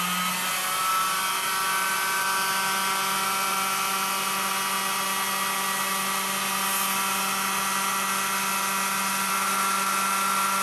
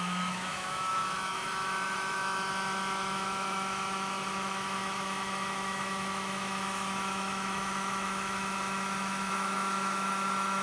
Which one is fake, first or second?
second